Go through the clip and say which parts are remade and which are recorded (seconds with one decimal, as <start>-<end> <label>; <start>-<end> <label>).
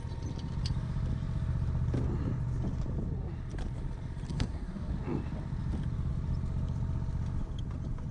0.0-4.3 recorded; 4.3-4.9 remade; 4.9-8.1 recorded